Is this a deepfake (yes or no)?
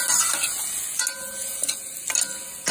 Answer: no